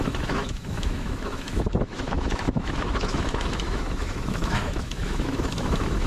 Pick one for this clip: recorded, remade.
remade